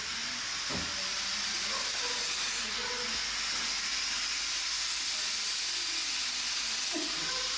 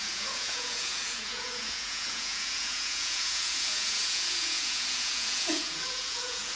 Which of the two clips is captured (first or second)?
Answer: first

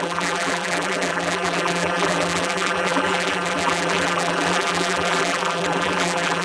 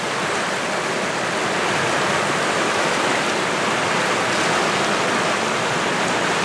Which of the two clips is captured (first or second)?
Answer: second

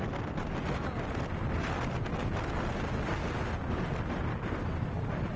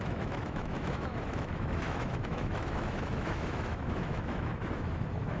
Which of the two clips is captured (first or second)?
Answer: first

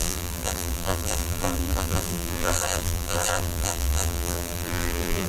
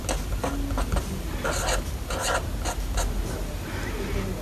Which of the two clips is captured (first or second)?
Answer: second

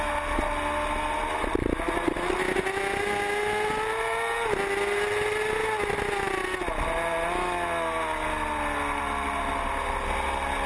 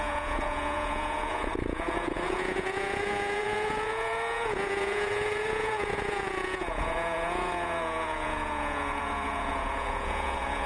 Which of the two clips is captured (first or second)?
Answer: first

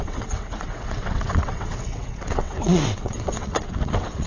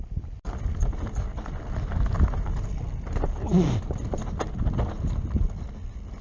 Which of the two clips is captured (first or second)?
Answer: second